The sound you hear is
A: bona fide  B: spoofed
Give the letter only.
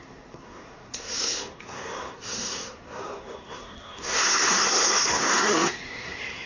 B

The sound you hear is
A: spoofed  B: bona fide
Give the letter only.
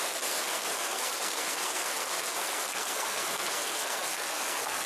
A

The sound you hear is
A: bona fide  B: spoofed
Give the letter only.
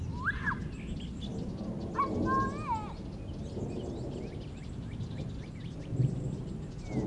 A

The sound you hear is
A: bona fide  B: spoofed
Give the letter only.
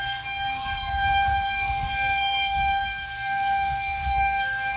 B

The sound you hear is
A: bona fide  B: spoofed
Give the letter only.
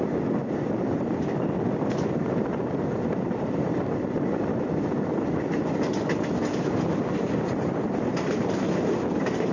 A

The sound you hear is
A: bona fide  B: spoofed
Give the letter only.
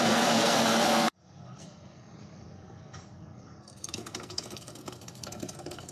B